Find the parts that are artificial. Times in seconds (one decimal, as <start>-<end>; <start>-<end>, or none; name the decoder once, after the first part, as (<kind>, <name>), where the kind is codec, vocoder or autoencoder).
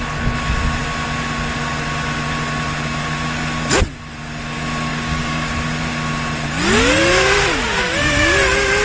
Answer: 4.9-5.5 (codec, DAC)